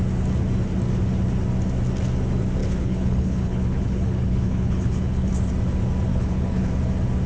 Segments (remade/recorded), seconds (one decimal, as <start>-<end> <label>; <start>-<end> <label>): 0.0-2.6 recorded; 2.6-5.3 remade; 5.3-6.1 recorded; 6.1-6.7 remade; 6.7-7.3 recorded